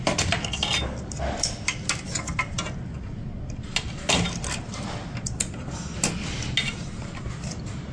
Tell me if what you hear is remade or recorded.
recorded